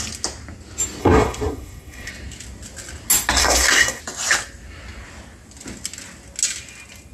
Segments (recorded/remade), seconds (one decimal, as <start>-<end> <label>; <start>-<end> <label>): 0.0-1.0 recorded; 1.0-2.1 remade; 2.1-3.4 recorded; 3.4-4.0 remade; 4.0-7.1 recorded